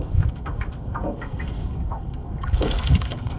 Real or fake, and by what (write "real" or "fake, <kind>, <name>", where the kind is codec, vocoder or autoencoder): fake, codec, SNAC